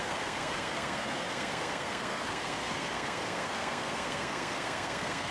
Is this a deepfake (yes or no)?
yes